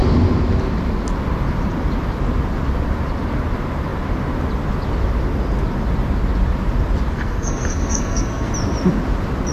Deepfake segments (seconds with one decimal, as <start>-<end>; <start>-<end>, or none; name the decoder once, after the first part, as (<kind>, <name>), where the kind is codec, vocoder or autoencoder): 7.1-8.5 (codec, SNAC)